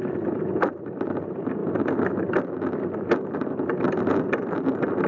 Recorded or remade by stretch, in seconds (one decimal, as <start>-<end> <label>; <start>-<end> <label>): 0.0-5.1 recorded